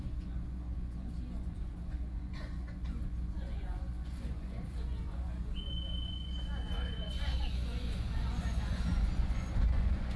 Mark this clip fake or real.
fake